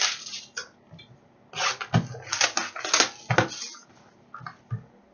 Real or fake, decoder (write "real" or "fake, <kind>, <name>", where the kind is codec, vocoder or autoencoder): real